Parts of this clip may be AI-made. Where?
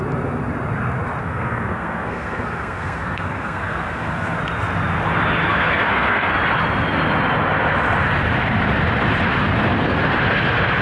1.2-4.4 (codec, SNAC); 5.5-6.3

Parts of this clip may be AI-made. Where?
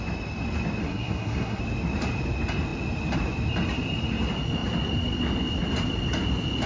0.8-1.6 (codec, SNAC)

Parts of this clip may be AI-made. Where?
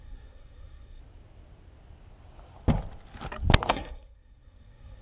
0.0-1.0 (codec, SNAC); 3.7-5.0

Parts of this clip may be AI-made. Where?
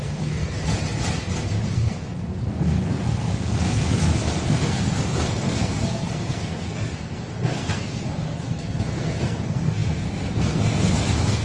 0.0-0.7 (codec, SNAC); 1.7-11.4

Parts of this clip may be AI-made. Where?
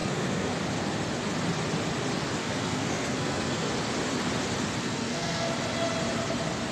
0.0-0.5 (codec, SNAC); 2.4-3.7; 4.8-5.5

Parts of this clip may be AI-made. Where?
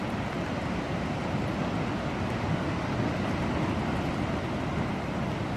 none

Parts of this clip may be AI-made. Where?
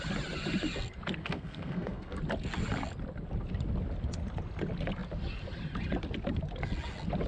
1.2-2.2 (codec, SNAC)